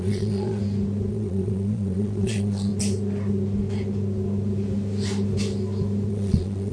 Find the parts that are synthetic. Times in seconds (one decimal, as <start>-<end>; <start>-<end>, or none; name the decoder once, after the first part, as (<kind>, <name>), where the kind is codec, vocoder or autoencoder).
0.0-0.6 (vocoder, Vocos); 1.1-2.7; 6.1-6.7